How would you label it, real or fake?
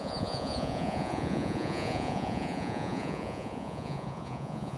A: fake